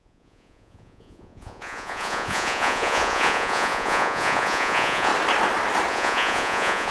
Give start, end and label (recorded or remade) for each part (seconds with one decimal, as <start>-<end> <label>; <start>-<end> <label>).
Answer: 0.0-5.1 remade; 5.1-5.9 recorded; 5.9-6.9 remade